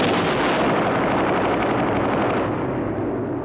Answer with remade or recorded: recorded